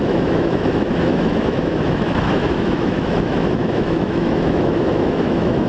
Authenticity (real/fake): fake